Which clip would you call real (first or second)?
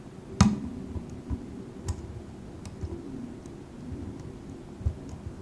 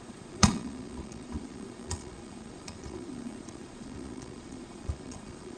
first